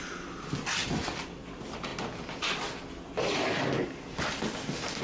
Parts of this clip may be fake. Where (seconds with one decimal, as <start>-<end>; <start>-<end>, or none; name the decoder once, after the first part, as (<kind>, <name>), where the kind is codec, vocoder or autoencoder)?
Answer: none